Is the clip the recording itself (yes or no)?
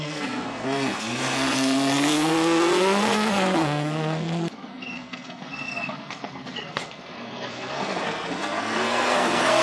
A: no